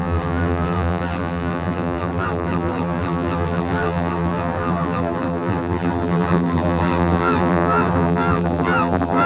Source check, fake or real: fake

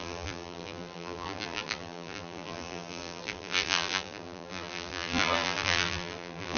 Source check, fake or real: fake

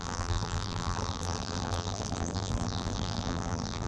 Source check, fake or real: fake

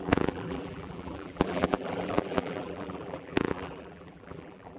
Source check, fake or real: fake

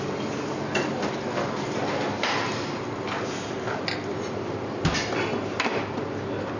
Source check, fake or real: real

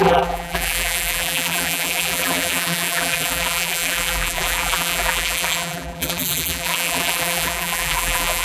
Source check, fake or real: fake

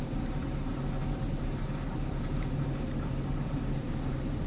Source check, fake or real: fake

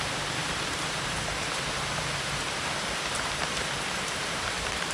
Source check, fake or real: fake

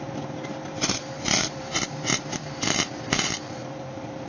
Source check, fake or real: fake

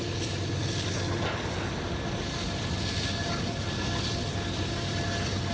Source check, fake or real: real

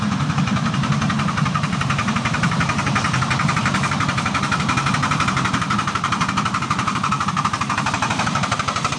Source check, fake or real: fake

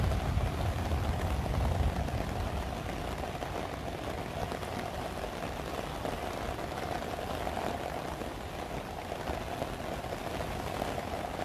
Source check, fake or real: real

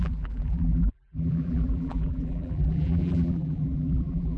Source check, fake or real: fake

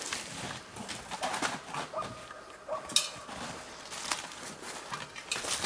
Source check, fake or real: real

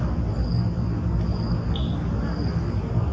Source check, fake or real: real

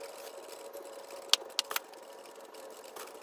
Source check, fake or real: real